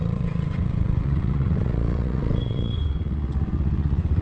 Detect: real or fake fake